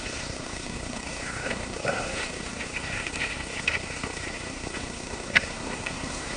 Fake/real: fake